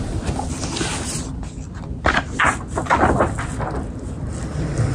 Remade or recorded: recorded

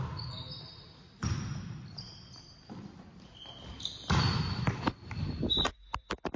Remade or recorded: recorded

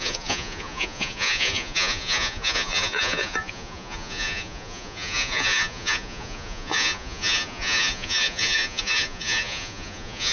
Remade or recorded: remade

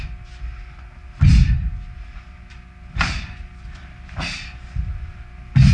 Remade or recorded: recorded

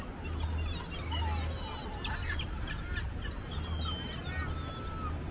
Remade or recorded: recorded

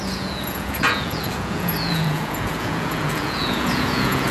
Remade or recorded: remade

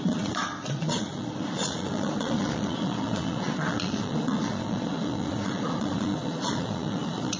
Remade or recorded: remade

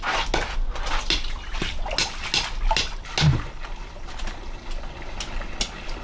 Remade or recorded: recorded